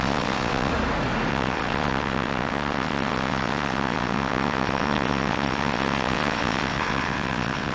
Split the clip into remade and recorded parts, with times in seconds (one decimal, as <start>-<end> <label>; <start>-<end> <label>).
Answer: 0.0-0.7 remade; 0.7-1.3 recorded; 1.3-7.7 remade